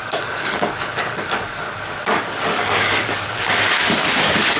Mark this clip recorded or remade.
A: remade